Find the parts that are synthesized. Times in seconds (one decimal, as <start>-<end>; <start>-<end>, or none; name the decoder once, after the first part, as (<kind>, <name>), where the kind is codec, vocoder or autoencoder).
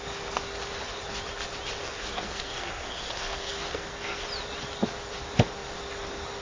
1.8-4.2 (codec, SNAC)